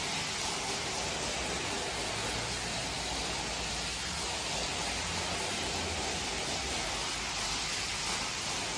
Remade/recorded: recorded